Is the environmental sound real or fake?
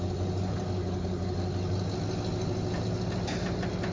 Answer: real